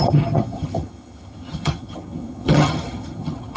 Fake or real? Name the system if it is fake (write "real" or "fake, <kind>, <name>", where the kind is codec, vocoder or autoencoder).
fake, vocoder, HiFi-GAN